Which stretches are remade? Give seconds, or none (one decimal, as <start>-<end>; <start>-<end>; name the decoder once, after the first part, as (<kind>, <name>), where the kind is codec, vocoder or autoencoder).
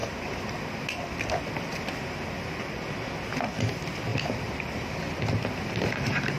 4.1-5.1 (vocoder, BigVGAN v2)